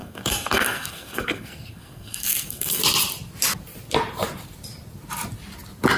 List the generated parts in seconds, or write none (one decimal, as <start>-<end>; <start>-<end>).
0.0-2.8